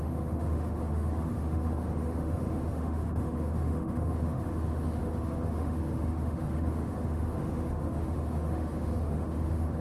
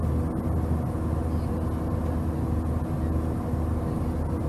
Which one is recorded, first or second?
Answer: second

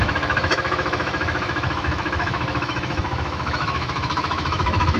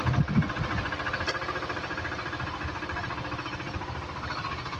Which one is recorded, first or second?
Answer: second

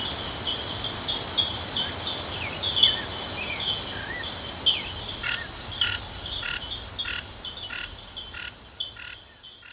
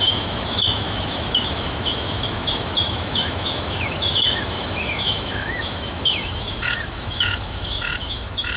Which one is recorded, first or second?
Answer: first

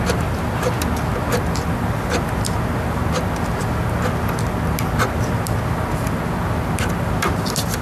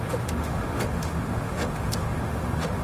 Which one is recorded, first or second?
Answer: first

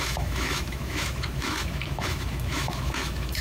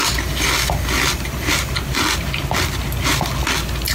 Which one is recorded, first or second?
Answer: second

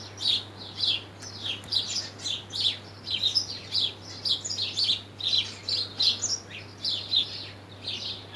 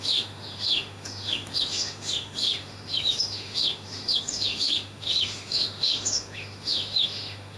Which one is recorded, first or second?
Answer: first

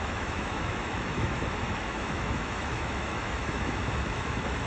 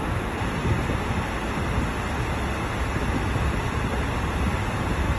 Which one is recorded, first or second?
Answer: second